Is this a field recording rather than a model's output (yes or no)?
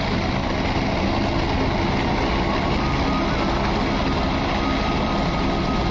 yes